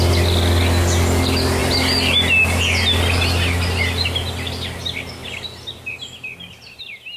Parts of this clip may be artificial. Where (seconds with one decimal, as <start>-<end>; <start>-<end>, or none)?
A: none